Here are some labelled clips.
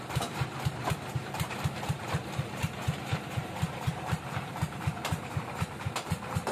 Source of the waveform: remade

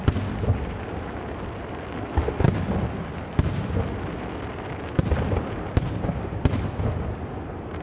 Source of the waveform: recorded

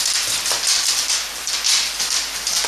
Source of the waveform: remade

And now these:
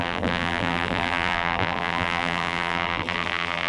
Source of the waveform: remade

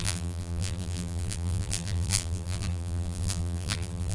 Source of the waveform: remade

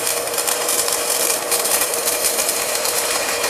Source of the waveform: remade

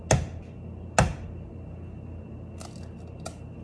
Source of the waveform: recorded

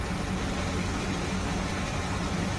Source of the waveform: recorded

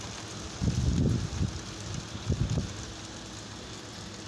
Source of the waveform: recorded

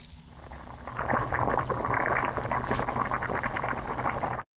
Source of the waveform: recorded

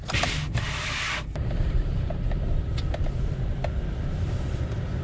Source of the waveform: recorded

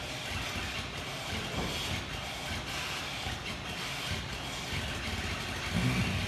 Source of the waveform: recorded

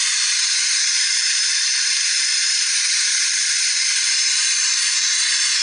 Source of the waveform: remade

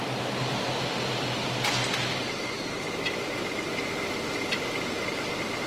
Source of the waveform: recorded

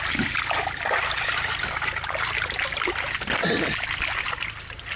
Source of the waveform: recorded